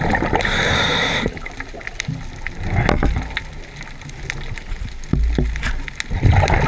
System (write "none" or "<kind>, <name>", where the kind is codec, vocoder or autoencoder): none